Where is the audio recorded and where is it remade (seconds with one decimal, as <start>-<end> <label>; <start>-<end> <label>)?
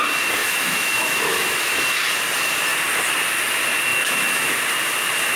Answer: 0.0-0.4 recorded; 0.4-1.7 remade; 1.7-3.9 recorded; 3.9-4.5 remade; 4.5-5.4 recorded